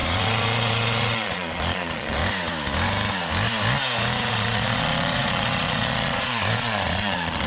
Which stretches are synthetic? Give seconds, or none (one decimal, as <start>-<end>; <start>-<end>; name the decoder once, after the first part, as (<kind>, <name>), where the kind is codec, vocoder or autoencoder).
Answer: 0.0-2.2 (vocoder, Vocos); 4.3-7.5